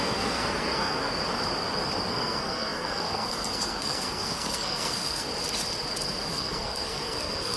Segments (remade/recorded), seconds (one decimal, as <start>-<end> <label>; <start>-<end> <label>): 0.0-1.2 remade; 1.2-2.1 recorded; 2.1-5.3 remade; 5.3-6.3 recorded; 6.3-7.6 remade